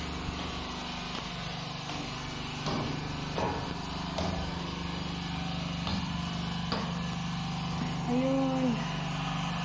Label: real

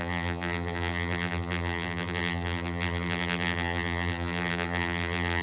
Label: fake